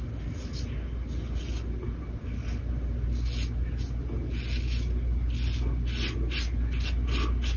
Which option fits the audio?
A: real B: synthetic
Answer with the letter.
A